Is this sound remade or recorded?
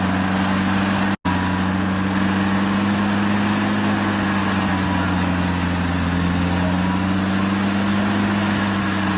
recorded